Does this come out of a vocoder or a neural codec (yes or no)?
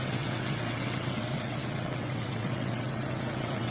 yes